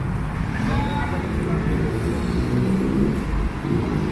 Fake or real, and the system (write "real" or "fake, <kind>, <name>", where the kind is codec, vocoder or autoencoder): real